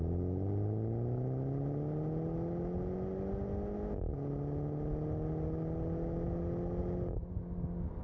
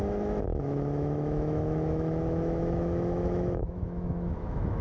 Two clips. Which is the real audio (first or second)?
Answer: first